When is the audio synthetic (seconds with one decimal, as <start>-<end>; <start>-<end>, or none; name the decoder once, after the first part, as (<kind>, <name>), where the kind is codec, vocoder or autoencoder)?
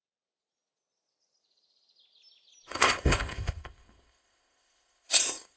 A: 2.7-5.6 (codec, ZipCodec)